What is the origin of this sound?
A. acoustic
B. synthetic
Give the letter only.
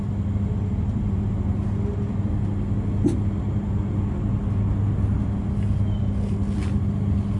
A